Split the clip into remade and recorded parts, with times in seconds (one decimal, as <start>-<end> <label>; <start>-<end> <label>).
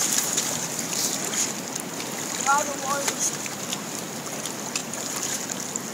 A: 0.0-0.7 remade; 0.7-4.8 recorded; 4.8-5.4 remade; 5.4-5.9 recorded